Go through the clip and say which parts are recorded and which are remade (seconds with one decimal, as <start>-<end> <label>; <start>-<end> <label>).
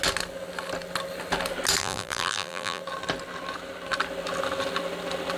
0.0-1.8 recorded; 1.8-2.8 remade; 2.8-5.4 recorded